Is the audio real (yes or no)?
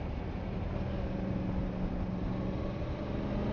yes